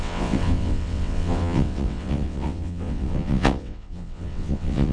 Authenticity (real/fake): fake